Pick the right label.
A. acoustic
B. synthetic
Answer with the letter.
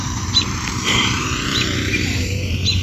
B